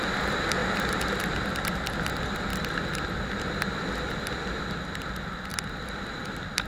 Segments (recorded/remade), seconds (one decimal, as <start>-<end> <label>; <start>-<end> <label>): 0.0-0.6 remade; 0.6-1.5 recorded; 1.5-2.5 remade; 2.5-4.6 recorded; 4.6-6.7 remade